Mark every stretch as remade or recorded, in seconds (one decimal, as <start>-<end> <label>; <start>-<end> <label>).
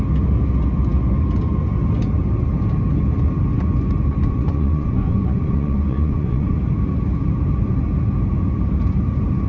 0.0-4.1 recorded; 4.1-6.6 remade; 6.6-9.5 recorded